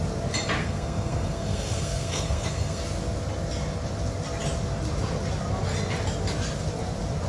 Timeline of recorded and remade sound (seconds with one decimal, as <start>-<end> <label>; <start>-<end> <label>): 0.0-0.6 recorded; 0.6-2.8 remade; 2.8-7.3 recorded